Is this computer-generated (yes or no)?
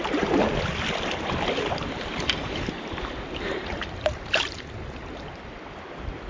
yes